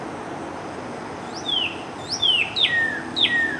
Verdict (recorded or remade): recorded